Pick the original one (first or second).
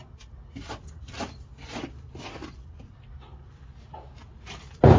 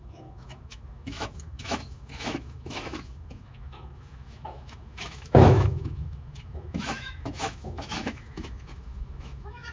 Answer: first